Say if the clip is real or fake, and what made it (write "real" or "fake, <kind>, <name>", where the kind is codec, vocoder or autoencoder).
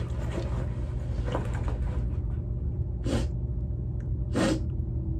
real